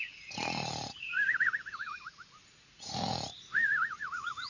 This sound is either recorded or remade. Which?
remade